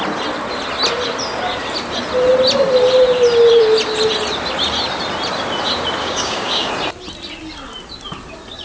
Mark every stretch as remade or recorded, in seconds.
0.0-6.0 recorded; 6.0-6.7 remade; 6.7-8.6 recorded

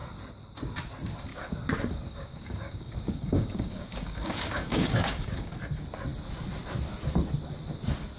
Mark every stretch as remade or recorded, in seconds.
0.0-1.3 recorded; 1.3-5.5 remade; 5.5-8.2 recorded

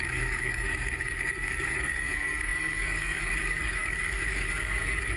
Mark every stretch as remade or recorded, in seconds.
0.0-5.2 remade

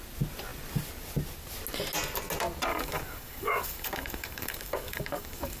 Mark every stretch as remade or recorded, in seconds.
0.0-2.7 recorded; 2.7-5.6 remade